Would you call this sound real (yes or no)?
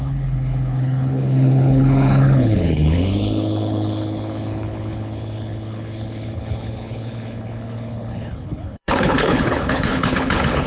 no